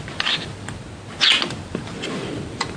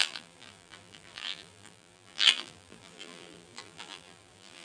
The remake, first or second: second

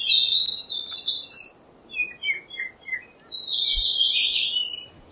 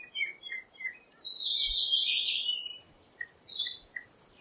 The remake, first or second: second